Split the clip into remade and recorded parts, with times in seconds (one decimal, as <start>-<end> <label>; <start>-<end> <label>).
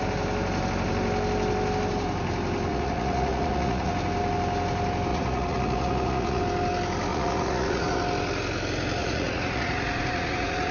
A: 0.0-2.7 recorded; 2.7-3.9 remade; 3.9-5.1 recorded; 5.1-6.4 remade; 6.4-7.1 recorded; 7.1-8.0 remade; 8.0-9.0 recorded; 9.0-10.7 remade